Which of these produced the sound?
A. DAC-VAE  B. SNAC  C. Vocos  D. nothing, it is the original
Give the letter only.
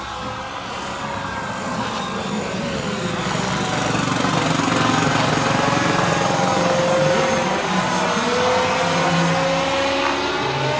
D